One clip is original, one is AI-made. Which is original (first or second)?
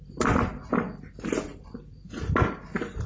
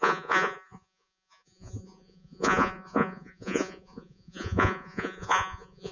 first